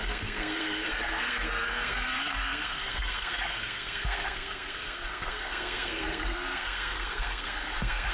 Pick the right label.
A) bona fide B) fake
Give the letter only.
B